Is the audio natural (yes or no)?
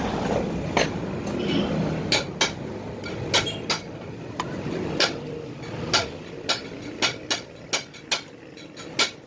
yes